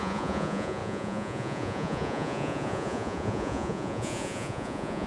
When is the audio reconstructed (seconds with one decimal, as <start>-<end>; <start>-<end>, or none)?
0.0-5.1